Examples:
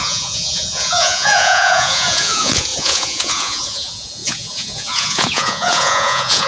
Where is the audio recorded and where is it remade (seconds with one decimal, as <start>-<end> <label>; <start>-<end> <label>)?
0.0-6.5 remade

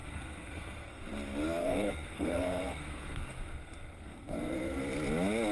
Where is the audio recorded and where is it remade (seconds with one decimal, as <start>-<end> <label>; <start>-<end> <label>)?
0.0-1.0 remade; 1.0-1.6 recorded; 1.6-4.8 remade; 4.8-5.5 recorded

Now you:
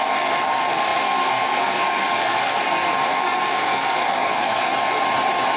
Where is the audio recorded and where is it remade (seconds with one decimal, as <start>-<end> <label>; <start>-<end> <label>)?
0.0-4.7 remade; 4.7-5.6 recorded

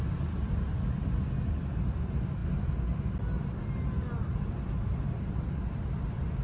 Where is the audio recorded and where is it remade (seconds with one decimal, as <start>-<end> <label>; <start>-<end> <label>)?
0.0-6.4 recorded

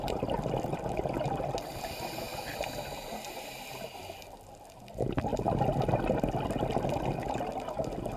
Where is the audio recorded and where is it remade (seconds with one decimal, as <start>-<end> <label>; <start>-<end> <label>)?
0.0-8.2 recorded

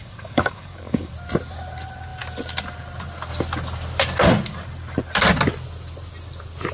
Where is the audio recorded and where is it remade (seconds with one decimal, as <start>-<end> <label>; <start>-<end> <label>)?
0.0-1.1 remade; 1.1-6.7 recorded